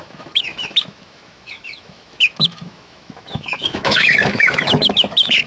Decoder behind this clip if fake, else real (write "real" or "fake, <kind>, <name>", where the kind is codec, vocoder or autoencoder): fake, autoencoder, DAC-VAE